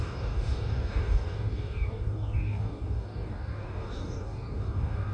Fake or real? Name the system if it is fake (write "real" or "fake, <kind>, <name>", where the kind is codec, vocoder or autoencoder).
fake, codec, DAC